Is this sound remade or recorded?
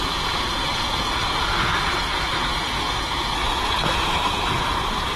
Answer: remade